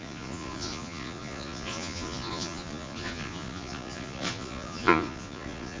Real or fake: fake